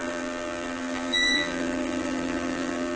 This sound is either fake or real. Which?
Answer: fake